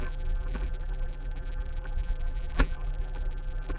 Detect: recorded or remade remade